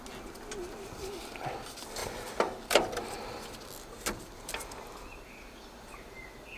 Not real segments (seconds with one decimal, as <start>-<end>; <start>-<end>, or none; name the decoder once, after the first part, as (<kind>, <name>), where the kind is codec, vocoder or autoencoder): none